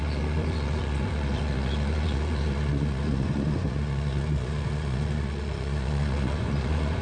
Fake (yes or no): yes